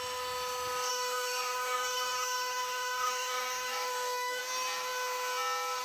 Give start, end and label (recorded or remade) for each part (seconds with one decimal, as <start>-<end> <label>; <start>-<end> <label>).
0.0-0.9 recorded; 0.9-4.4 remade; 4.4-5.8 recorded